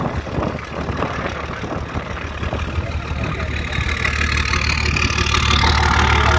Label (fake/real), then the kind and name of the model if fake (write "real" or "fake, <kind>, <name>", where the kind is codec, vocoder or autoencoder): real